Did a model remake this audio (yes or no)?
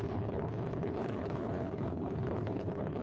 yes